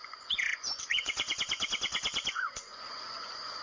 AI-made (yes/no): yes